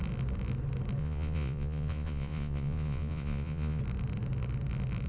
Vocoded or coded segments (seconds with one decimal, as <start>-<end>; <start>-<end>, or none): 1.0-3.8